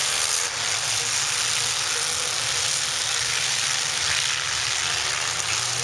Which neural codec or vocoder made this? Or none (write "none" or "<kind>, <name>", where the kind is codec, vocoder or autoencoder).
none